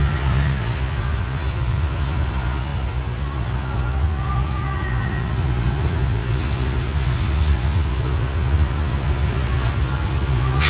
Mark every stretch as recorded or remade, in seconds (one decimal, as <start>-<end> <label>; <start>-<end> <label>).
0.0-10.7 remade